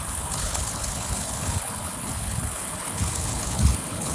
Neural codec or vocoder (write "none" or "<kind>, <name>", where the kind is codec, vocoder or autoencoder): codec, HILCodec